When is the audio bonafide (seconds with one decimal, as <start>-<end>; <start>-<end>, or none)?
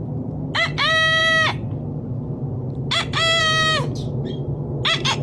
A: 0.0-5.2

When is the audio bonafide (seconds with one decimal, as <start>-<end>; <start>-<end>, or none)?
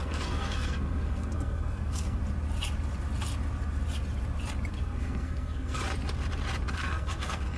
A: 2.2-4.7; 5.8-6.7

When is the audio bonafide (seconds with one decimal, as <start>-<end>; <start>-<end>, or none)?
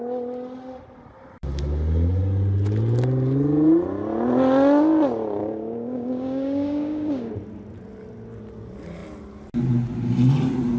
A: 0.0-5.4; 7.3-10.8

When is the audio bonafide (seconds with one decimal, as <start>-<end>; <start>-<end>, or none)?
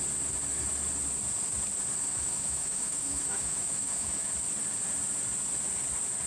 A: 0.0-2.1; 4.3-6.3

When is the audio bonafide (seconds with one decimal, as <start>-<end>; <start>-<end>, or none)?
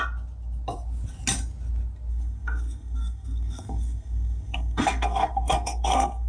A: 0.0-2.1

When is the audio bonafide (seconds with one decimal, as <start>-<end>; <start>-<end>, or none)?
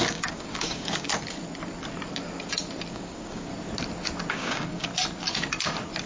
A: 1.1-2.9; 3.5-4.3; 4.9-6.1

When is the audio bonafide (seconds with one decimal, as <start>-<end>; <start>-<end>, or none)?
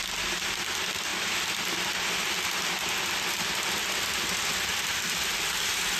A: 0.0-6.0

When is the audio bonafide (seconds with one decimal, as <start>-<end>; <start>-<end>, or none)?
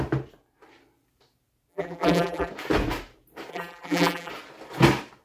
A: 0.0-1.7; 2.5-3.5; 4.3-5.2